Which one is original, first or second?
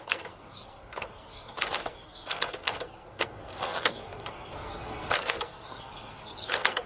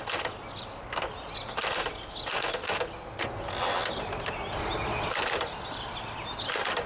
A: second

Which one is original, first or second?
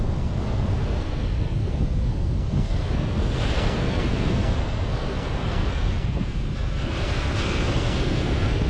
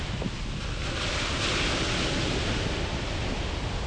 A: second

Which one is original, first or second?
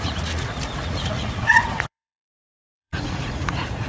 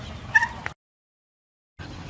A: second